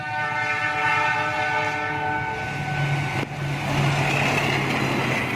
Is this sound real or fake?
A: real